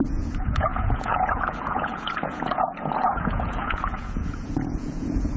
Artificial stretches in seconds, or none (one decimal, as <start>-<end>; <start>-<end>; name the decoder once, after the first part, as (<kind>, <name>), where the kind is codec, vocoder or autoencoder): 0.0-5.4 (vocoder, Vocos)